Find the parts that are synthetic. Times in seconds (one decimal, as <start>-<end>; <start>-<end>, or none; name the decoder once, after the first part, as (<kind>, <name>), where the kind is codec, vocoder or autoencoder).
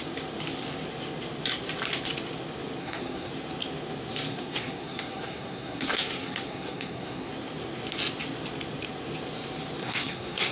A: 2.8-3.3 (codec, SNAC); 4.3-7.3; 9.8-10.5